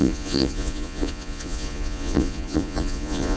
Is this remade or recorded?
remade